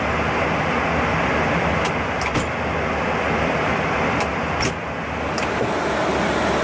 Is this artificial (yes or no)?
no